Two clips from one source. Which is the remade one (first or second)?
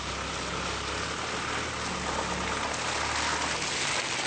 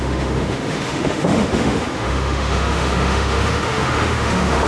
second